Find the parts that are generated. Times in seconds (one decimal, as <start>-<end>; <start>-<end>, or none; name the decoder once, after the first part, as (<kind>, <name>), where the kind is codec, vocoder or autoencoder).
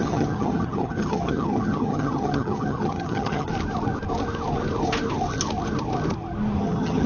0.0-3.5 (vocoder, HiFi-GAN); 6.6-7.1